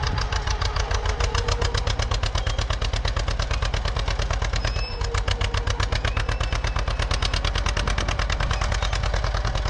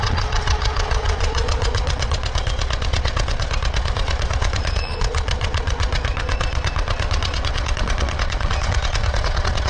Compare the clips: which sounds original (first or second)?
first